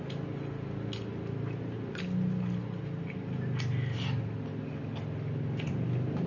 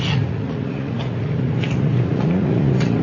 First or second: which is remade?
second